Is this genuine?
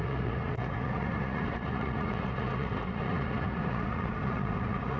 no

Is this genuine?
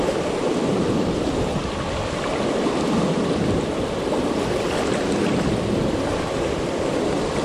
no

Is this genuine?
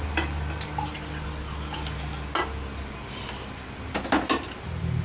yes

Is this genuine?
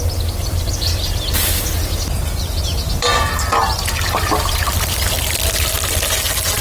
yes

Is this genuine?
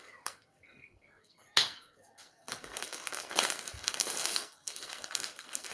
no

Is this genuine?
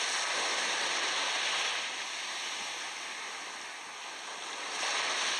yes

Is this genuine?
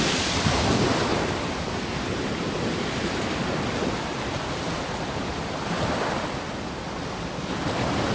yes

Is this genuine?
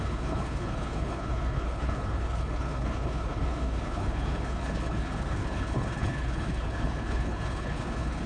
no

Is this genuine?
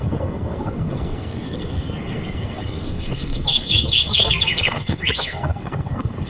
no